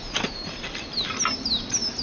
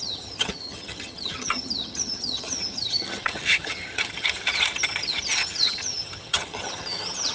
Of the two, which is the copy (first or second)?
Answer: second